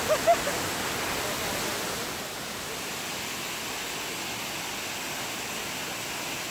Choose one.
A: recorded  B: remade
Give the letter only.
A